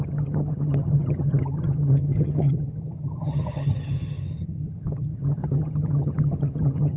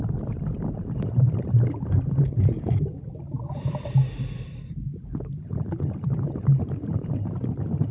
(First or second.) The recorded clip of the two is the second